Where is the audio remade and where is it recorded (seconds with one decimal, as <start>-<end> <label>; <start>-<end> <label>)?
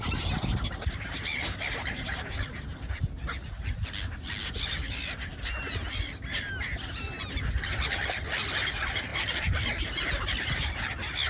0.0-9.1 recorded; 9.1-10.8 remade; 10.8-11.3 recorded